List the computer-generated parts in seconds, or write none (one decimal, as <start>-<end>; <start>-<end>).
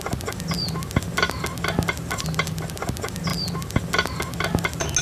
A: 3.3-3.8